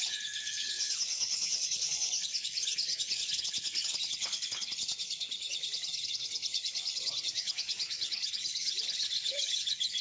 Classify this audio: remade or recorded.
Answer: remade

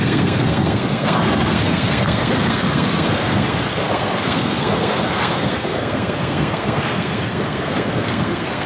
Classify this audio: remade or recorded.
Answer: remade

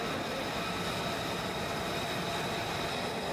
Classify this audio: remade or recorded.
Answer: recorded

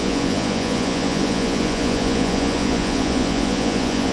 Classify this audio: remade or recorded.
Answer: remade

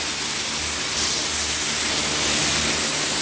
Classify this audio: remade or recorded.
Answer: recorded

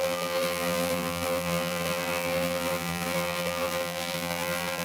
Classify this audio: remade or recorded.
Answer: remade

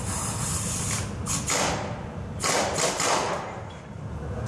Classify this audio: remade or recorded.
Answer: recorded